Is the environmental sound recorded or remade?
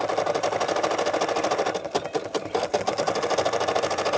recorded